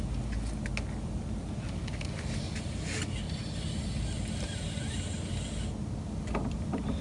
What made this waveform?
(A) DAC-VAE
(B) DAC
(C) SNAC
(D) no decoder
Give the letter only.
D